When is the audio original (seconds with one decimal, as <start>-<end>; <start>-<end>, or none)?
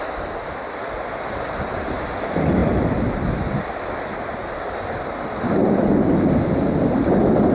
0.0-2.6; 3.3-7.5